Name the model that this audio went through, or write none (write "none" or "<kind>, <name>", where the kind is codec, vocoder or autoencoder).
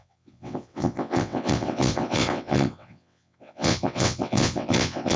vocoder, WaveNeXt